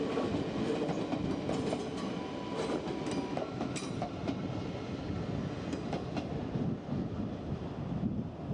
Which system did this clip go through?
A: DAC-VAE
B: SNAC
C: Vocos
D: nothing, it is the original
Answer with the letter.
D